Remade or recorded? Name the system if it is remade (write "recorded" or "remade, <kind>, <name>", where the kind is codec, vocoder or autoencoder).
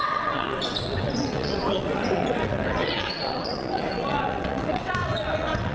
remade, vocoder, WaveNeXt